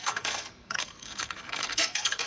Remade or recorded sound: remade